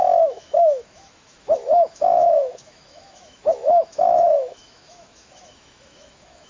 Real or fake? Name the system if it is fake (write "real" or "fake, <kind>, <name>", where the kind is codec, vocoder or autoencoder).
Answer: fake, autoencoder, DAC-VAE